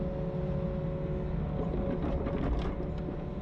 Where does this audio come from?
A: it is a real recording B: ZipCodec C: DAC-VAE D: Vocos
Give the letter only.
A